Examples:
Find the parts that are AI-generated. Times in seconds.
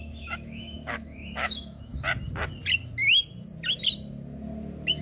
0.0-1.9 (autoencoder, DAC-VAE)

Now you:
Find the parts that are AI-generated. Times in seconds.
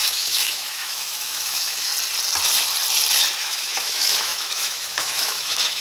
0.0-1.9 (autoencoder, DAC-VAE); 3.4-5.8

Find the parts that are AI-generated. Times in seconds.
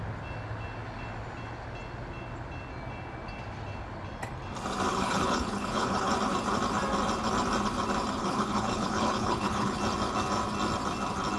4.9-6.1 (codec, HILCodec); 8.2-9.8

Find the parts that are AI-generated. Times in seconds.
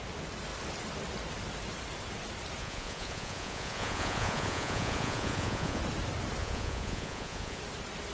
2.6-5.8 (vocoder, Vocos); 6.4-7.6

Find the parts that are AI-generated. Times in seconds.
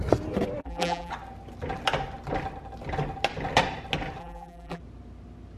0.6-1.1 (vocoder, BigVGAN v2); 4.2-4.8